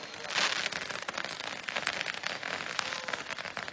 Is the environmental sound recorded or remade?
recorded